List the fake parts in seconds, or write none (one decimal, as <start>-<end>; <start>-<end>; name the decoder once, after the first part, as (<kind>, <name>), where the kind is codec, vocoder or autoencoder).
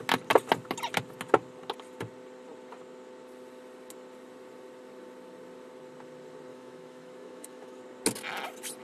6.5-7.8 (autoencoder, DAC-VAE)